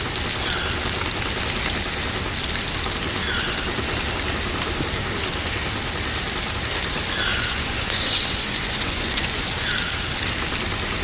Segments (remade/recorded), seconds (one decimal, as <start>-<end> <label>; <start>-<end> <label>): 0.0-7.3 recorded; 7.3-9.7 remade; 9.7-11.0 recorded